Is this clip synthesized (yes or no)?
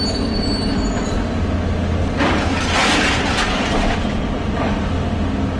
no